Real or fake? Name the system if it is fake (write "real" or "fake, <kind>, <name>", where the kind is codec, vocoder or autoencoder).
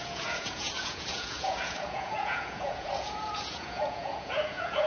fake, vocoder, Vocos